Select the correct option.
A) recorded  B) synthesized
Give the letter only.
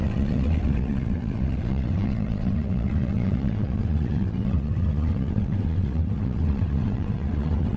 B